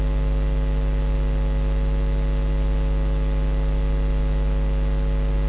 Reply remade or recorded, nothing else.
recorded